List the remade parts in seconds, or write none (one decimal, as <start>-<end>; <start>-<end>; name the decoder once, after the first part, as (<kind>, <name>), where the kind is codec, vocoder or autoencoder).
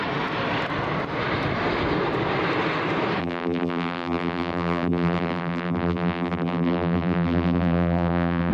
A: 3.2-8.5 (vocoder, BigVGAN v2)